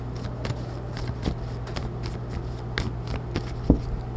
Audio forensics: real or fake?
real